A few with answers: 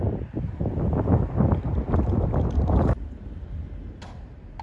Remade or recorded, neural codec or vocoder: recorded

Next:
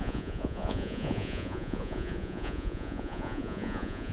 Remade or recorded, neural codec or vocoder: remade, vocoder, Vocos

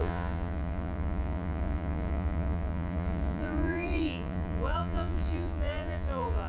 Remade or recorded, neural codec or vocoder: remade, vocoder, Vocos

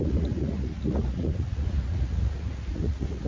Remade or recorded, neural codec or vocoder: remade, vocoder, Vocos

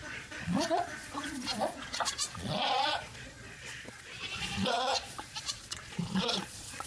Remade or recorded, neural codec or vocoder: remade, vocoder, Vocos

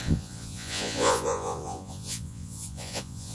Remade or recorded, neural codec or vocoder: remade, vocoder, Vocos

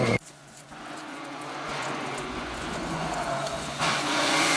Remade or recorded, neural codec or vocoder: remade, vocoder, Vocos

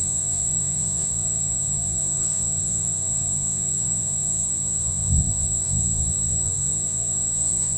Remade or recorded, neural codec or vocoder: remade, vocoder, Vocos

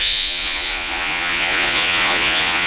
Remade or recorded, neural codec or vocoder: remade, vocoder, Vocos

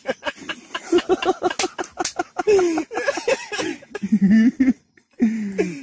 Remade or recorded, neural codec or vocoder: recorded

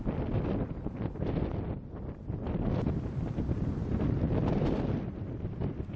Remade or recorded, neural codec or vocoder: recorded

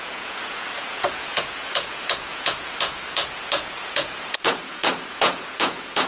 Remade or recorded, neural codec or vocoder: remade, vocoder, Vocos